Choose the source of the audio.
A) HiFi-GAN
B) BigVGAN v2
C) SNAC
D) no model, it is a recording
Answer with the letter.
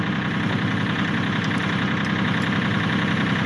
D